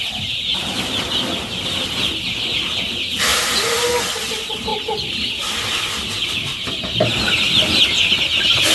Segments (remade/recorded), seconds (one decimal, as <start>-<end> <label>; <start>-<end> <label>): 0.0-3.3 recorded; 3.3-3.9 remade; 3.9-8.7 recorded